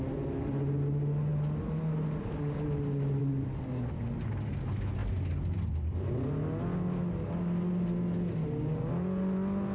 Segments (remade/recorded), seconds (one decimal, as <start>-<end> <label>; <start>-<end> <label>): 0.0-9.7 recorded